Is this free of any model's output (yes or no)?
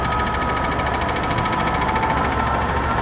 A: yes